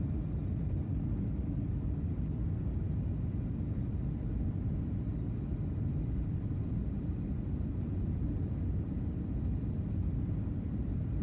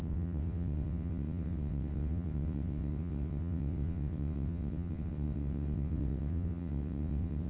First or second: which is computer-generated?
second